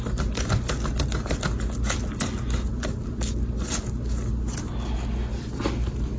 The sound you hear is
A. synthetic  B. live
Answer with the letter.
B